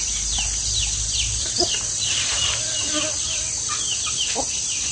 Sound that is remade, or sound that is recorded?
recorded